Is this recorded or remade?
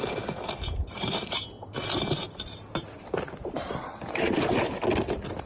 recorded